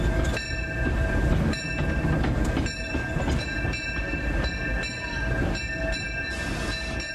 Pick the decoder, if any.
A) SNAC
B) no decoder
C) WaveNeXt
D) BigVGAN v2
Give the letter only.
B